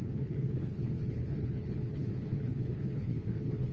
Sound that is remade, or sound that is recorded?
remade